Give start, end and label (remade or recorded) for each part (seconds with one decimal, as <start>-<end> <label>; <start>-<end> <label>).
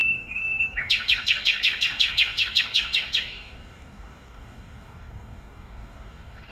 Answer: 0.0-6.5 remade